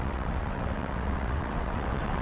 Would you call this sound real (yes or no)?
no